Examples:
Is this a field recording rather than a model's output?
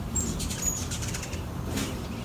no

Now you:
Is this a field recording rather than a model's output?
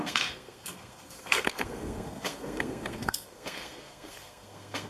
no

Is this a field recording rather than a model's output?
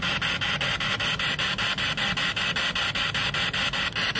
yes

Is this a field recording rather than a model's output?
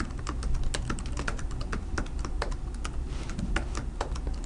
yes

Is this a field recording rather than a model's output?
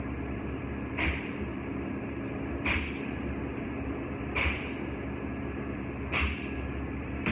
no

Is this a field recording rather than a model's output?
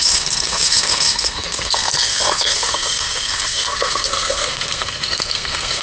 no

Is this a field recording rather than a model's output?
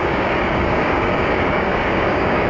no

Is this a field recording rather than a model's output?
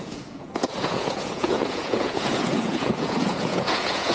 no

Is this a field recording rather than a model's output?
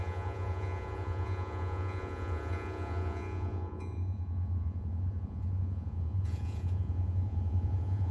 no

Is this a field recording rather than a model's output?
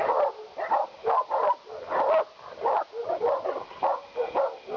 yes